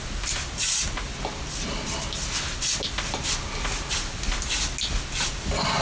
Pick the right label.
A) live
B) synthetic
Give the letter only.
A